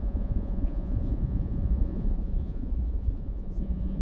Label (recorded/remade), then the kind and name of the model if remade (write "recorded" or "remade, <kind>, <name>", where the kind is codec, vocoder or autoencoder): remade, vocoder, Vocos